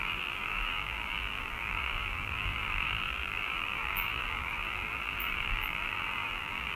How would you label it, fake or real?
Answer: fake